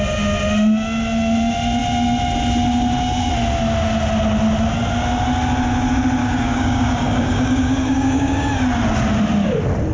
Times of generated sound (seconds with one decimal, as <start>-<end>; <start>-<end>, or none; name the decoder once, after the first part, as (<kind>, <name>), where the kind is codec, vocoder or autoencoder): 6.2-8.5 (codec, DAC)